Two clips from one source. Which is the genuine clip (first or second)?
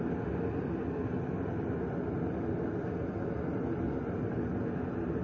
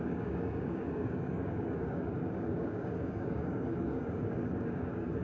first